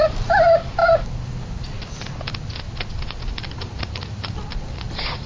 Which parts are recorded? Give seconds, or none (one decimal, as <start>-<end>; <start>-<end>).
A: 0.8-3.5